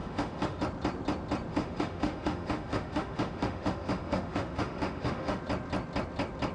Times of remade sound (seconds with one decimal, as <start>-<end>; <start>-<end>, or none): 0.0-0.6; 1.5-5.4